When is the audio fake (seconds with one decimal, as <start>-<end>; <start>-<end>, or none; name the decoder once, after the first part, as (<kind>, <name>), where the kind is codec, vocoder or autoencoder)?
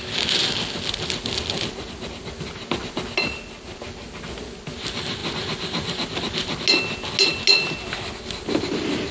none